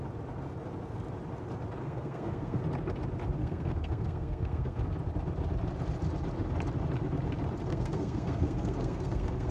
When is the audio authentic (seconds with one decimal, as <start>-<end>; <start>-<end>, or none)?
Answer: 0.0-1.8; 2.6-3.4; 4.8-7.7